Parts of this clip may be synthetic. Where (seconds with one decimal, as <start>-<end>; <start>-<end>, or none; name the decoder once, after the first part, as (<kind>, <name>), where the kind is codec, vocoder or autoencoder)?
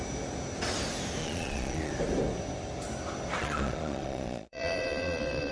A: 1.2-1.9 (vocoder, Vocos); 3.4-5.5